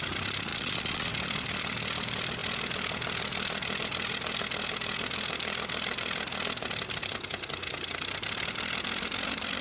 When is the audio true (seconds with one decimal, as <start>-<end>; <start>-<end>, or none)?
0.0-0.5; 1.1-9.6